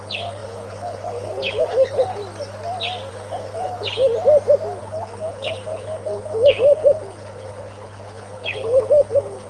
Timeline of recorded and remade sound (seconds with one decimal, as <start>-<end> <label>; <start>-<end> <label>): 0.0-2.2 remade; 2.2-3.1 recorded; 3.1-4.1 remade; 4.1-4.8 recorded; 4.8-9.5 remade